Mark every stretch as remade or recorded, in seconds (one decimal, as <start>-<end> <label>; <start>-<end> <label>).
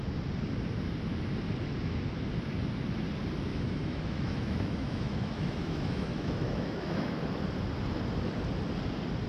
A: 0.0-3.5 recorded; 3.5-7.2 remade; 7.2-9.3 recorded